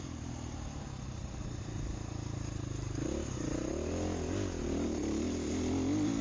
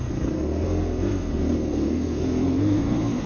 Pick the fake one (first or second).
second